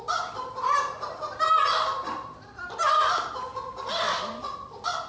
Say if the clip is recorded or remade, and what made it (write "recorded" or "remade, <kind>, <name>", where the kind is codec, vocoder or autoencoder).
recorded